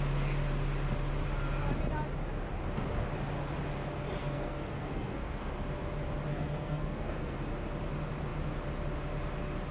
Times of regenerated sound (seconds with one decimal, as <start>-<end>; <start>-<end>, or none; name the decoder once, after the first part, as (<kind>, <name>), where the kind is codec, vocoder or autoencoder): 4.2-5.5 (codec, SNAC); 6.3-7.4